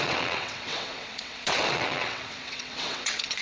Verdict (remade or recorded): remade